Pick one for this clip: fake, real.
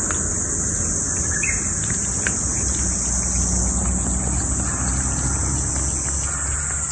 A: real